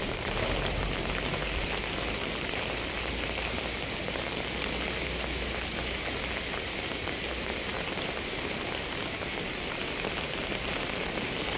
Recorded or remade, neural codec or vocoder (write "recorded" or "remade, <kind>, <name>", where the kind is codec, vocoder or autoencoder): recorded